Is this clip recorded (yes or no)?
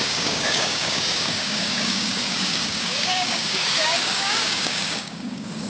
no